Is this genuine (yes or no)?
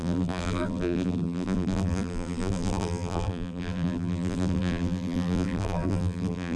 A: no